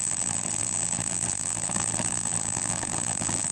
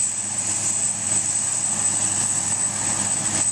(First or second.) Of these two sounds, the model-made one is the first